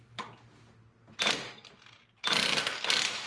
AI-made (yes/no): no